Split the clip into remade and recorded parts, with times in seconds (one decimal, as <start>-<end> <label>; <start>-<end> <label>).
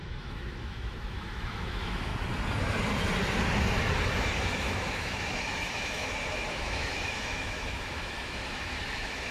0.0-2.1 remade; 2.1-4.4 recorded; 4.4-9.3 remade